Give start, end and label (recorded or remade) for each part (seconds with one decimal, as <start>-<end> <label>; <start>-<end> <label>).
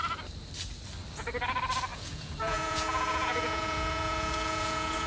0.0-1.9 recorded; 1.9-5.1 remade